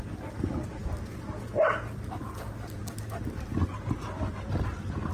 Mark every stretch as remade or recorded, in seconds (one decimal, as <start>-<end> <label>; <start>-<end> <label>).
0.0-5.1 recorded